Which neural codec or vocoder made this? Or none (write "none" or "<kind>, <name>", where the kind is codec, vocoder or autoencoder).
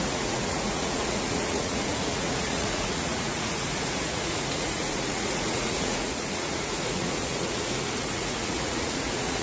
vocoder, Vocos